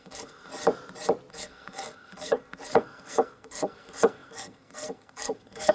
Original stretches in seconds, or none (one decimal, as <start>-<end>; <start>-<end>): 0.5-1.3